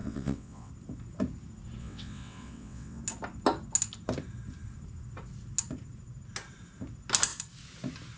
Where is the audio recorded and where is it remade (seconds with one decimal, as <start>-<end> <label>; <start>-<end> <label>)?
0.0-0.7 remade; 0.7-1.8 recorded; 1.8-3.0 remade; 3.0-8.2 recorded